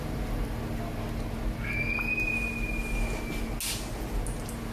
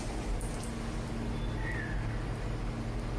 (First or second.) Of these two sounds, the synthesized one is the second